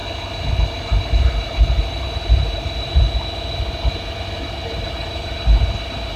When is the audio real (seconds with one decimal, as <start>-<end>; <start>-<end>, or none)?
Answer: 0.0-3.7